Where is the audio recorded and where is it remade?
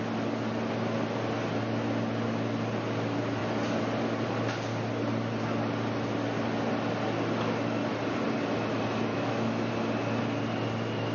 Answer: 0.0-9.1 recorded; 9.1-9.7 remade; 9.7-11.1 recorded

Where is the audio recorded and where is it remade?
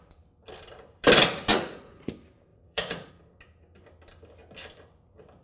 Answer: 0.0-1.5 recorded; 1.5-2.1 remade; 2.1-2.5 recorded; 2.5-3.1 remade; 3.1-5.4 recorded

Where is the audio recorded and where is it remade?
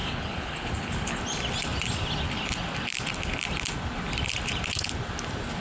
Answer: 0.0-1.2 remade; 1.2-5.6 recorded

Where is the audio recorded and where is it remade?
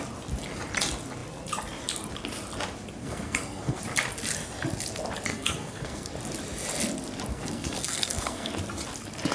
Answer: 0.0-3.0 recorded; 3.0-3.8 remade; 3.8-5.3 recorded; 5.3-6.1 remade; 6.1-7.3 recorded; 7.3-8.5 remade; 8.5-9.3 recorded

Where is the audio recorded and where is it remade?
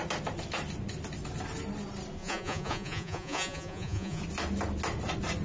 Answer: 0.0-2.2 recorded; 2.2-4.2 remade; 4.2-5.4 recorded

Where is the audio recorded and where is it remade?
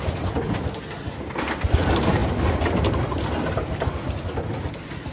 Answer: 0.0-5.1 recorded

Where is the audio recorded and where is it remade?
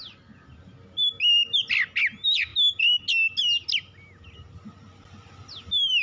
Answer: 0.0-6.0 recorded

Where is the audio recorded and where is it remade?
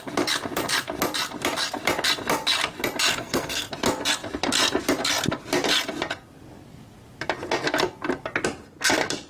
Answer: 0.0-3.1 recorded; 3.1-3.7 remade; 3.7-9.3 recorded